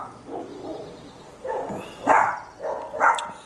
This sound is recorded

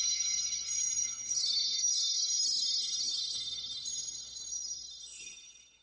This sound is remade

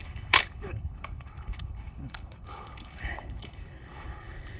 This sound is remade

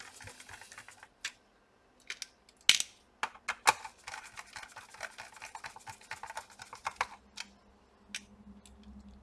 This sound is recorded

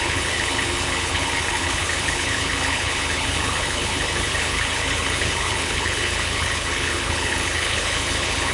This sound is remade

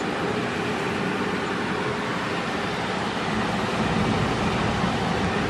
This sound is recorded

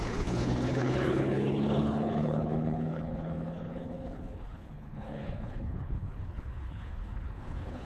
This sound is remade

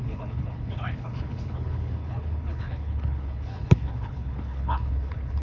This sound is remade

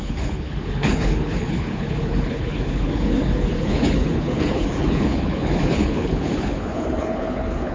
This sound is remade